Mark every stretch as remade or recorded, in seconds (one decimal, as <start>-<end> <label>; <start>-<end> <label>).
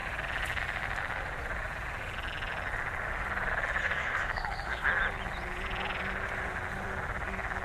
0.0-3.8 recorded; 3.8-4.9 remade; 4.9-7.6 recorded